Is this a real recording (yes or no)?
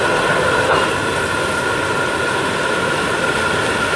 yes